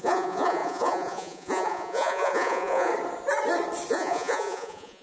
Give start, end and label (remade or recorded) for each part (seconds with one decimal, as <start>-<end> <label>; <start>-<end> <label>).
0.0-2.9 remade; 2.9-3.9 recorded; 3.9-5.0 remade